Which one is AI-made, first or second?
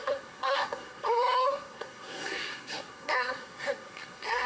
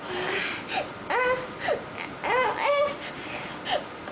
first